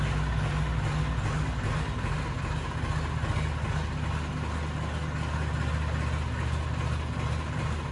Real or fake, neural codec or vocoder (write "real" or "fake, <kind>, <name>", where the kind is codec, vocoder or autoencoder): real